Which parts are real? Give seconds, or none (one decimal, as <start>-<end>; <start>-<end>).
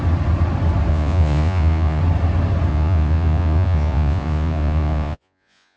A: 0.0-0.9; 2.0-2.7